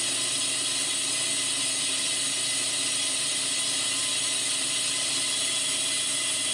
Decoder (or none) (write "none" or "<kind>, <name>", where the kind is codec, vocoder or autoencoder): none